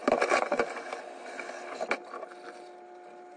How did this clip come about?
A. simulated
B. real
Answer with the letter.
B